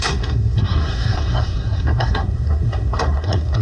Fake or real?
fake